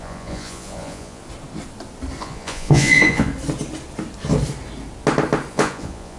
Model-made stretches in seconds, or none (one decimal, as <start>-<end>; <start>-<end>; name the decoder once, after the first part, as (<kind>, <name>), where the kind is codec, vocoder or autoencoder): 0.0-1.2 (vocoder, Vocos); 2.2-3.3; 5.5-6.2